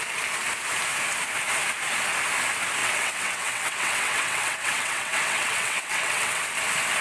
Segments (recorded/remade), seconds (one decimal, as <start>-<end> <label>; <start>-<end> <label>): 0.0-2.8 recorded; 2.8-6.4 remade; 6.4-7.0 recorded